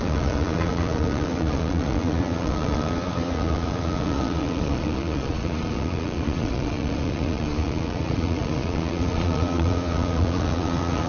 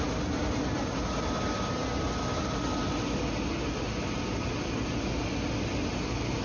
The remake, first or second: first